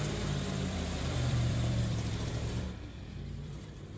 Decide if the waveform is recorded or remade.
remade